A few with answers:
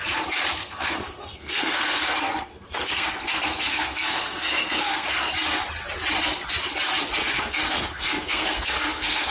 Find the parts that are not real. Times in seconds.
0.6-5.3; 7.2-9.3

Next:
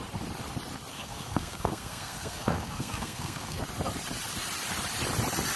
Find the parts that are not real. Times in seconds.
0.9-3.6

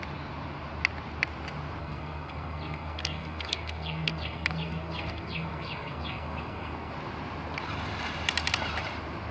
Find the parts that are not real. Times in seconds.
1.8-6.9

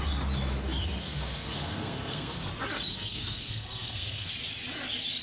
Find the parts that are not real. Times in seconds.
1.0-2.5; 2.9-4.3